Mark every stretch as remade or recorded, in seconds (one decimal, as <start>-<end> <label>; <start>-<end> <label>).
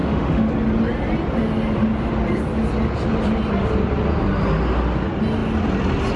0.0-0.5 remade; 0.5-6.2 recorded